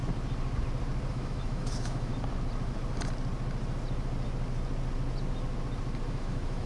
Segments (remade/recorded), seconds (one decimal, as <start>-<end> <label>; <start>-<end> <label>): 0.0-1.1 recorded; 1.1-2.1 remade; 2.1-6.1 recorded; 6.1-6.7 remade

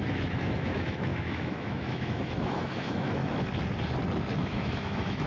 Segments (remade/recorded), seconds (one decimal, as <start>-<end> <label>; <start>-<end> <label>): 0.0-3.2 remade; 3.2-4.4 recorded; 4.4-5.3 remade

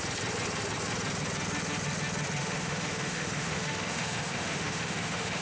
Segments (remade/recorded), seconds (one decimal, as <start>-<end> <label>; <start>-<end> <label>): 0.0-2.4 recorded; 2.4-5.4 remade

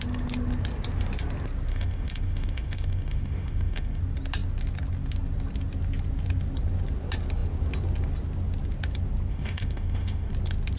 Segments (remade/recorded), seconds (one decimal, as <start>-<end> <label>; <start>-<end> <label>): 0.0-1.7 recorded; 1.7-4.0 remade; 4.0-9.3 recorded; 9.3-10.3 remade; 10.3-10.8 recorded

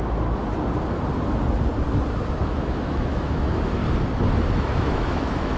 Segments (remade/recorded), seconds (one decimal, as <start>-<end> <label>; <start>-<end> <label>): 0.0-0.4 remade; 0.4-2.4 recorded; 2.4-3.8 remade; 3.8-4.4 recorded; 4.4-5.6 remade